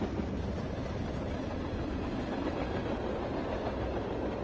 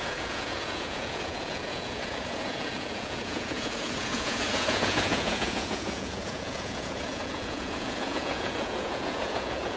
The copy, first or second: second